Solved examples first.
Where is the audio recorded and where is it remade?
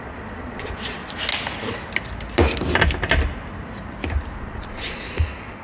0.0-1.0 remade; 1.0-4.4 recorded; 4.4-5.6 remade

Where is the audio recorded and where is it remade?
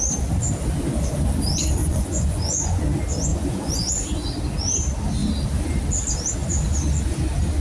0.0-1.8 recorded; 1.8-2.8 remade; 2.8-3.3 recorded; 3.3-3.9 remade; 3.9-7.6 recorded